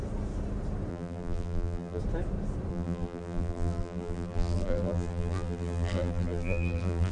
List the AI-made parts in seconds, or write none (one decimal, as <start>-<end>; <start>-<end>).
0.9-2.0; 2.7-7.1